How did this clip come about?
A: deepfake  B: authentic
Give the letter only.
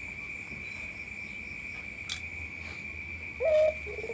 B